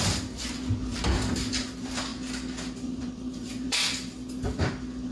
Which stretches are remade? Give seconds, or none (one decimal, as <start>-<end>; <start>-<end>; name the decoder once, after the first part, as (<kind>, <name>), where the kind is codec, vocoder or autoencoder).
0.0-0.9 (vocoder, BigVGAN v2); 1.5-2.1; 2.8-5.1